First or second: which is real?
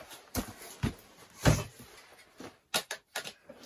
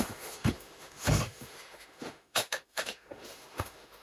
first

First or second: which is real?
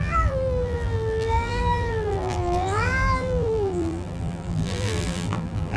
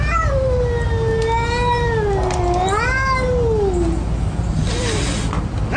second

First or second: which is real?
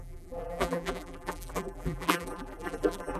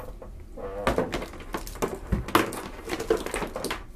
second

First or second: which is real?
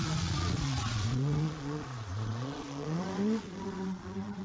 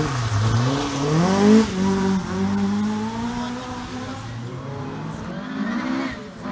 second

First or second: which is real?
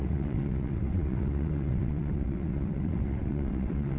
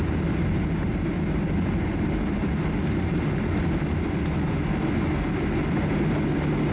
second